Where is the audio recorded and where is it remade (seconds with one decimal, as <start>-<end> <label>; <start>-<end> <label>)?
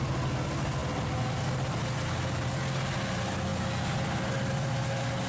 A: 0.0-5.3 recorded